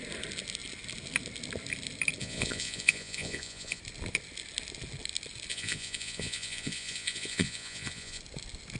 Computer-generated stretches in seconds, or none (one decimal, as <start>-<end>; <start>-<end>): 2.2-3.8; 5.5-8.2

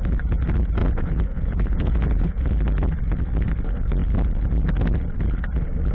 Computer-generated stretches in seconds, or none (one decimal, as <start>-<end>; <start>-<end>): 0.8-2.4

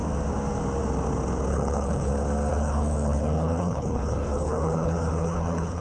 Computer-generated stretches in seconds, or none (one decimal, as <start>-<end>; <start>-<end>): 1.5-2.1; 2.5-5.8

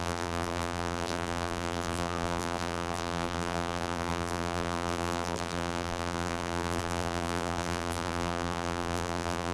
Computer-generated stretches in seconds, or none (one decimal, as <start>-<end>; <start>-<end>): 0.0-9.5

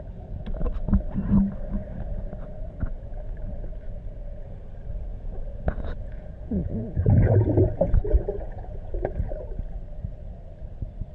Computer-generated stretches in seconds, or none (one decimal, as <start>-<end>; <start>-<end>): 5.1-9.3

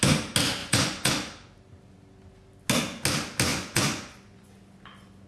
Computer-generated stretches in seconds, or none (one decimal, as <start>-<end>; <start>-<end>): 0.6-1.1; 3.5-4.5

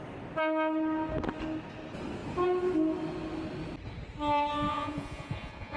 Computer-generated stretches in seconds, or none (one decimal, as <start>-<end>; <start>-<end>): 4.7-5.8

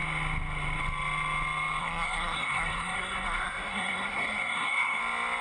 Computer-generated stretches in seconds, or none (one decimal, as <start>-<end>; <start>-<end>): 1.8-5.0